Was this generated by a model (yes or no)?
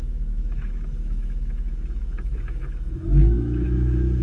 yes